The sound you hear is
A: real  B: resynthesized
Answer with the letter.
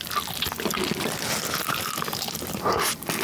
A